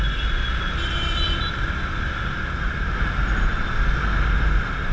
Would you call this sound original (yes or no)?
yes